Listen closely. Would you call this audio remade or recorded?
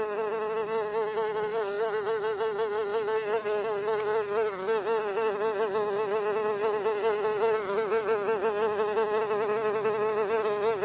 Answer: recorded